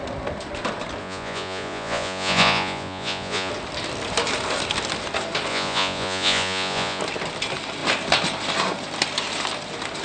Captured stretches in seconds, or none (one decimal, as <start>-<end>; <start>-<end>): 0.0-1.0; 3.5-5.5; 7.0-10.0